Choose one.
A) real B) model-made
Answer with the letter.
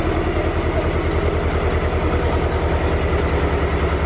A